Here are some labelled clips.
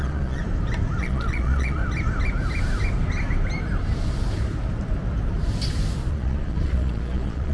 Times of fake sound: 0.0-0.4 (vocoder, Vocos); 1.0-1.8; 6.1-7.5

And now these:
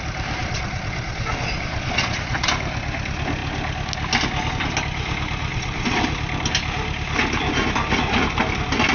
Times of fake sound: 0.4-2.5 (vocoder, Vocos); 5.5-6.0